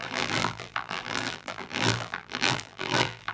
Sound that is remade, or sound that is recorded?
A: remade